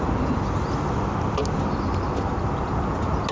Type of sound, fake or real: real